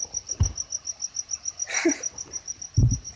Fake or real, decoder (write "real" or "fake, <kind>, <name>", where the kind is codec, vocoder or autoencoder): real